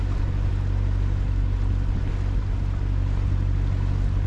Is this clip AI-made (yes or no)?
no